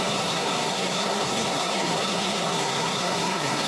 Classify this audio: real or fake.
fake